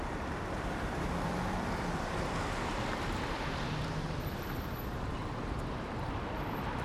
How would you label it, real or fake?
fake